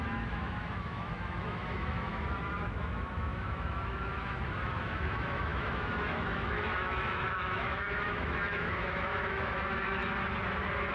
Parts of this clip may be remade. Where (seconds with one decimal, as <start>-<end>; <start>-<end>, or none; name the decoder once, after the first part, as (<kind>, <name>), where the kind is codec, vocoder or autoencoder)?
0.0-10.0 (autoencoder, DAC-VAE)